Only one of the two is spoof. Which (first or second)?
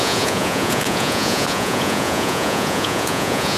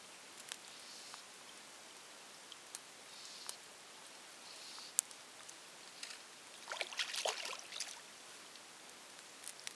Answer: first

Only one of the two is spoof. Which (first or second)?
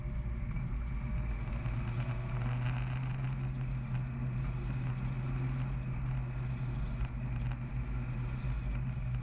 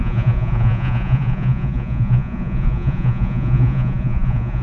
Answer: second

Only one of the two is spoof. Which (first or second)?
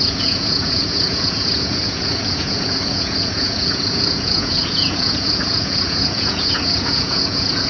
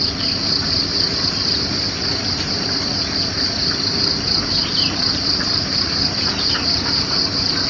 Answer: first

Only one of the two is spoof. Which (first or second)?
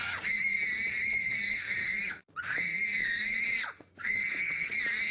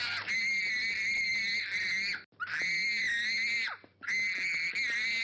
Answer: first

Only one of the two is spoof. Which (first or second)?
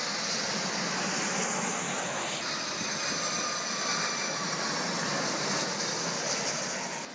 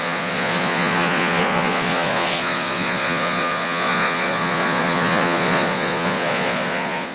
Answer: second